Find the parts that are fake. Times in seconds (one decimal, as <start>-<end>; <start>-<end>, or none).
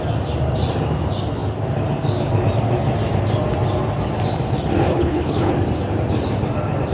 4.9-5.5